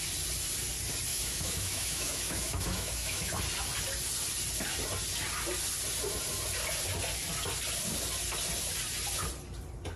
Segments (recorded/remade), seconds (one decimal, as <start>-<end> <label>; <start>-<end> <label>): 0.0-1.1 recorded; 1.1-3.3 remade; 3.3-10.0 recorded